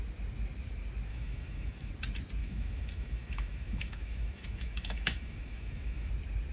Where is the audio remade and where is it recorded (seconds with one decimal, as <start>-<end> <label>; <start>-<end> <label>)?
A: 0.0-1.1 recorded; 1.1-1.9 remade; 1.9-2.4 recorded; 2.4-6.1 remade; 6.1-6.5 recorded